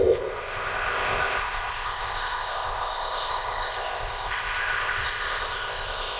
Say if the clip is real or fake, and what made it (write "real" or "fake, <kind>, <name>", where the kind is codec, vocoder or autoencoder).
fake, codec, ZipCodec